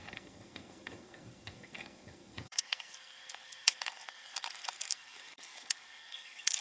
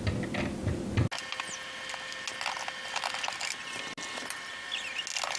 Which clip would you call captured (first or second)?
second